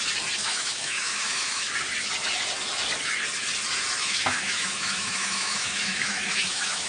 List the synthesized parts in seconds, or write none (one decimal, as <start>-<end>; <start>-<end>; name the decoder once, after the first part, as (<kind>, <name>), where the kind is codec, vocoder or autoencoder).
0.4-1.7 (autoencoder, DAC-VAE); 4.0-6.9